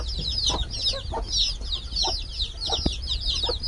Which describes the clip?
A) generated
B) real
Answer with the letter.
B